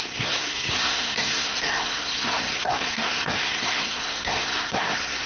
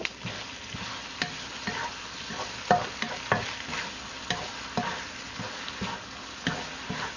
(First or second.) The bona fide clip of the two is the second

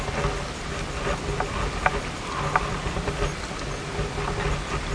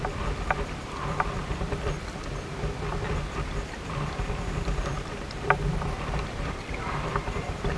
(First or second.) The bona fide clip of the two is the first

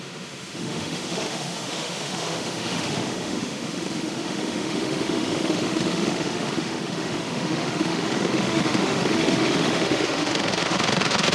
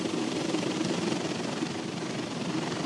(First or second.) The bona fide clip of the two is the second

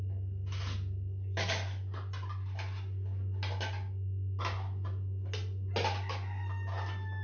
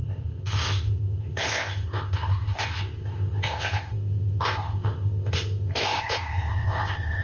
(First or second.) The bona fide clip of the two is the first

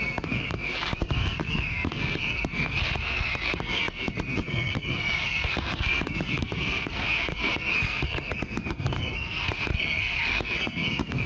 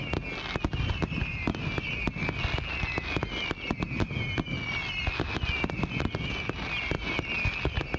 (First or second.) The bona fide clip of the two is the second